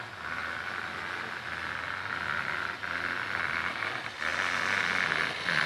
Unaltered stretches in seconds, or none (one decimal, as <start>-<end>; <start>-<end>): 0.0-5.7

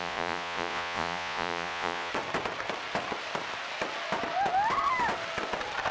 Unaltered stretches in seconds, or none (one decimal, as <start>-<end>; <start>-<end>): 2.1-5.9

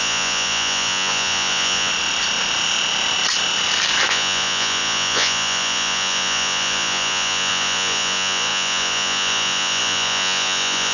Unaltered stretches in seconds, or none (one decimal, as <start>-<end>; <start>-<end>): 1.9-4.1